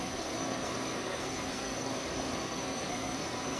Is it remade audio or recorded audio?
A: remade